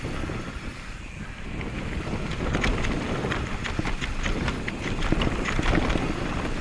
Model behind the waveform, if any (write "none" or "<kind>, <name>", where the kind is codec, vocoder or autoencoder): none